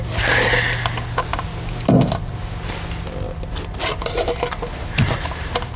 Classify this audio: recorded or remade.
recorded